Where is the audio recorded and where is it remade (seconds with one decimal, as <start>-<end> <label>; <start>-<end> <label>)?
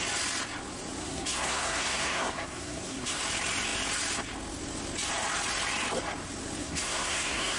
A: 0.0-1.0 recorded; 1.0-3.2 remade; 3.2-6.6 recorded; 6.6-7.6 remade